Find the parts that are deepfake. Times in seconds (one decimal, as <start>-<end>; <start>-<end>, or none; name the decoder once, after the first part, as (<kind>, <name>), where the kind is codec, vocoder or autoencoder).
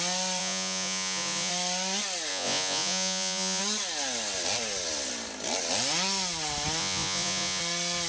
0.4-1.5 (vocoder, Vocos); 2.3-3.6; 6.8-7.6